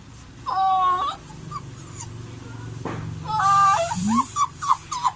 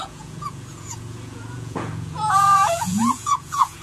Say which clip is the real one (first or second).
first